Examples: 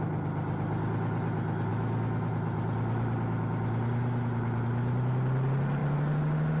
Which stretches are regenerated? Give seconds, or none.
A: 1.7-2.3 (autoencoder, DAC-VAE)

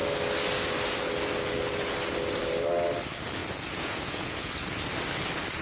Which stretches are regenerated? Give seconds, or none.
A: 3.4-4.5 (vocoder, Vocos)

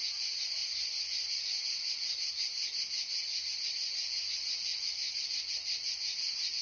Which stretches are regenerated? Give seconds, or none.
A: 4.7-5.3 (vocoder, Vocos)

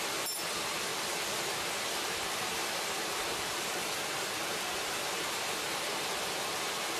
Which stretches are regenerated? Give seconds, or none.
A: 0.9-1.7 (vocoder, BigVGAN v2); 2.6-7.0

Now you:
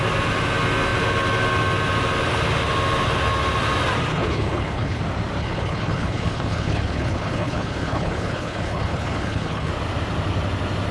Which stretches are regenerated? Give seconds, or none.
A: 4.1-5.0 (codec, HILCodec); 5.4-9.7

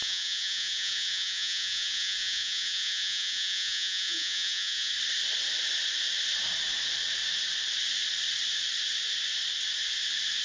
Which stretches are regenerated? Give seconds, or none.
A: 0.0-4.9 (vocoder, Vocos)